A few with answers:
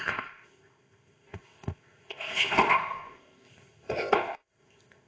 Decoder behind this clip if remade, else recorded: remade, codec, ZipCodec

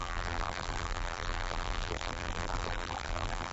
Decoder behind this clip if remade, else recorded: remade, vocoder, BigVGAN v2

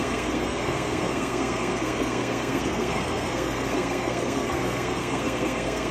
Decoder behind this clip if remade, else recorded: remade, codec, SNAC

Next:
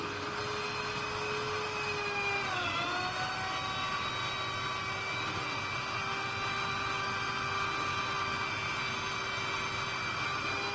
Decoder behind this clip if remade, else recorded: recorded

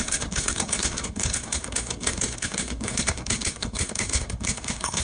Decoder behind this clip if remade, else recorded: remade, codec, SNAC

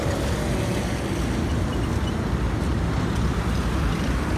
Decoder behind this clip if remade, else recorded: recorded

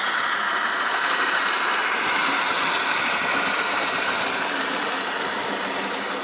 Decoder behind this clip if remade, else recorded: remade, vocoder, BigVGAN v2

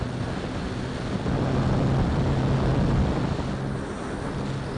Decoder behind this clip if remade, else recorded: recorded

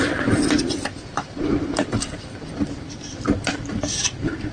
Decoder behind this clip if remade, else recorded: remade, vocoder, BigVGAN v2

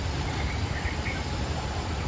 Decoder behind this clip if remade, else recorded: recorded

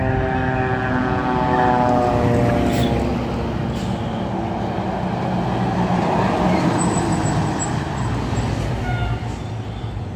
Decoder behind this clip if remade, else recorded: recorded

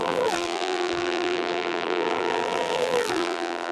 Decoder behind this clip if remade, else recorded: remade, vocoder, BigVGAN v2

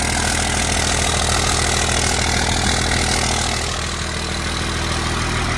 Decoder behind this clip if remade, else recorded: recorded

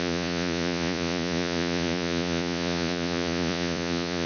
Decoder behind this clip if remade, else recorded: remade, vocoder, Vocos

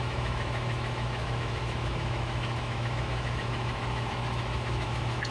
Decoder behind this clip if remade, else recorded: remade, autoencoder, DAC-VAE